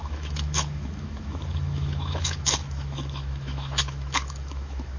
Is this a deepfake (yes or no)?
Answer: yes